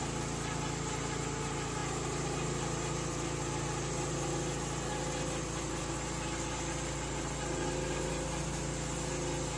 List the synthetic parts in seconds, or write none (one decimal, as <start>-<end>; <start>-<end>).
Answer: none